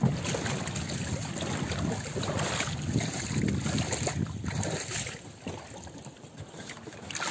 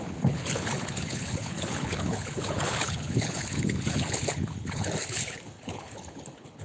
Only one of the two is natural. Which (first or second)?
first